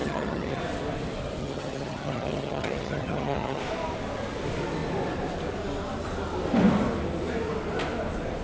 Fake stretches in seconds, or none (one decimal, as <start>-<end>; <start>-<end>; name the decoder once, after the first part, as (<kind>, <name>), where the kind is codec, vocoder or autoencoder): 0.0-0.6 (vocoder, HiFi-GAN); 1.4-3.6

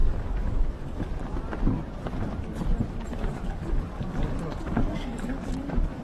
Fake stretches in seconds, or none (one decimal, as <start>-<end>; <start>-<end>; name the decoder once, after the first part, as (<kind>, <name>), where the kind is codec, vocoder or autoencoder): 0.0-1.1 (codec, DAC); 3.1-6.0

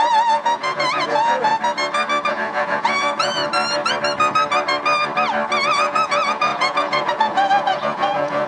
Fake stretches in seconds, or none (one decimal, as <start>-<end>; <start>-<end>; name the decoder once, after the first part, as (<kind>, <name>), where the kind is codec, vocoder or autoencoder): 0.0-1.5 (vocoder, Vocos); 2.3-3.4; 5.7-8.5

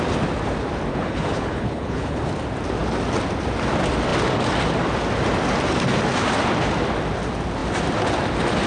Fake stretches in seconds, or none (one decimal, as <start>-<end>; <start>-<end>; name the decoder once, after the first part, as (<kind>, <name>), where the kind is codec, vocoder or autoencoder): 0.9-2.2 (codec, HILCodec)

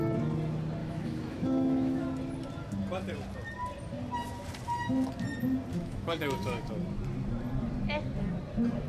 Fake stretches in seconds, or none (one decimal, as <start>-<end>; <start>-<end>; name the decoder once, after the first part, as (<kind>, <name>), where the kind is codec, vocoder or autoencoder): 0.8-2.0 (autoencoder, DAC-VAE); 5.7-6.7

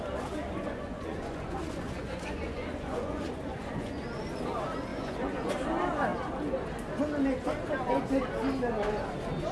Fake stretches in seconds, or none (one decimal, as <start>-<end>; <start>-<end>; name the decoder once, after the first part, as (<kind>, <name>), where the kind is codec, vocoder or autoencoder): 0.5-4.0 (vocoder, Vocos); 4.9-5.5

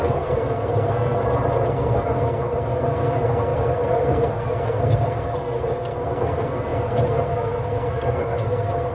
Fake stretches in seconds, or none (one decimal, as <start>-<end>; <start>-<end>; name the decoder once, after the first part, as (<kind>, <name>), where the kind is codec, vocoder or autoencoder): 0.0-1.2 (codec, SNAC); 1.7-8.9

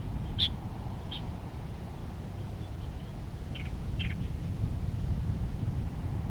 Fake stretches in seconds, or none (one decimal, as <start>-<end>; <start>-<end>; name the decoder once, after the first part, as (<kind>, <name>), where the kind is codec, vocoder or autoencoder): 0.0-2.0 (vocoder, Vocos); 2.8-6.3